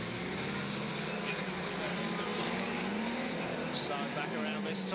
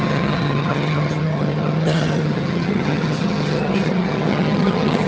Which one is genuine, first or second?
first